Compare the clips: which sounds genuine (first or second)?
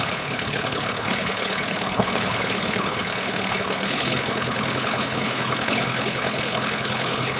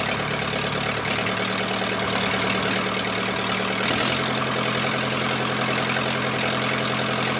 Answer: second